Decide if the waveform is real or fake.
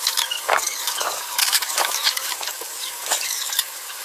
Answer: fake